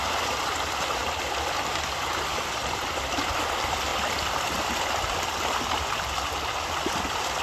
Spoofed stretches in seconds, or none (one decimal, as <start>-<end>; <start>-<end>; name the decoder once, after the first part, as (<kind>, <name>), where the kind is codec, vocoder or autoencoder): none

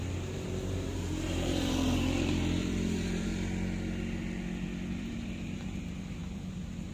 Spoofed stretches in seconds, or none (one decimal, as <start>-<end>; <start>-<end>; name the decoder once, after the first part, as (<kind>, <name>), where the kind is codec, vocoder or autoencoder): 0.0-3.3 (vocoder, BigVGAN v2); 4.9-6.9

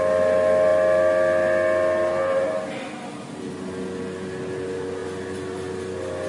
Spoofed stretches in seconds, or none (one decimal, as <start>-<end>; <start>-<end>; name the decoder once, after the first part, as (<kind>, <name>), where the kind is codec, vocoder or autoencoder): none

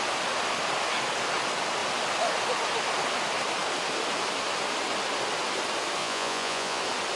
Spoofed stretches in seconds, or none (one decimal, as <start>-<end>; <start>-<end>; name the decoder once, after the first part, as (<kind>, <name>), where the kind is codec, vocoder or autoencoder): 6.0-6.8 (vocoder, Vocos)